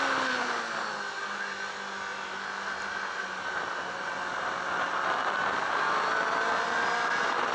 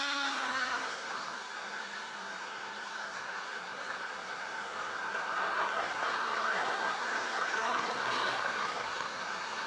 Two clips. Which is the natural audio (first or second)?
first